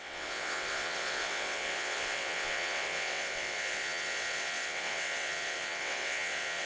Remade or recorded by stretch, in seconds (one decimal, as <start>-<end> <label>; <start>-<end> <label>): 0.0-6.7 remade